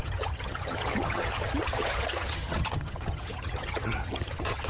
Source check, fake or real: fake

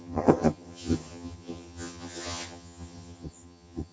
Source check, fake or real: fake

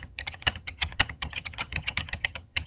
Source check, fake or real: fake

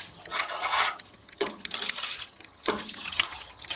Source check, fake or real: fake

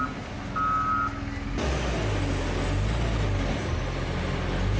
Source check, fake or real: real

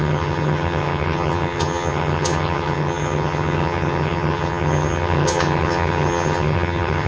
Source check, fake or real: fake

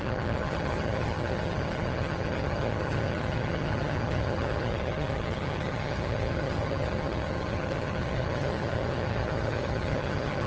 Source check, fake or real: fake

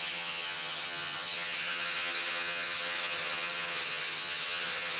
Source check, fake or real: fake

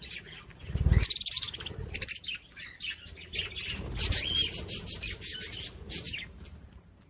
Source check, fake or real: real